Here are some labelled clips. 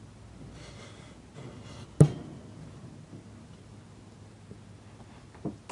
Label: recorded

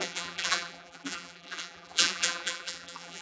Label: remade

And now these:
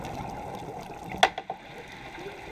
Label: recorded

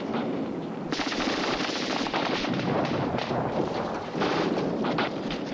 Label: remade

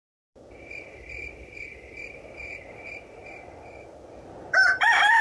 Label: remade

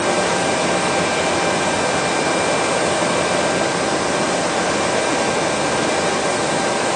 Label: recorded